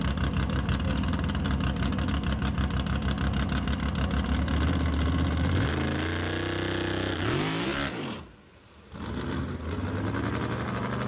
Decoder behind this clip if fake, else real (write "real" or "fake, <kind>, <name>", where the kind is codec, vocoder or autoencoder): real